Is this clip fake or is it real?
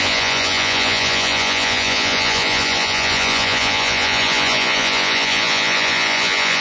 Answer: fake